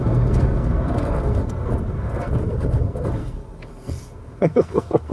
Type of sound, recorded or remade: remade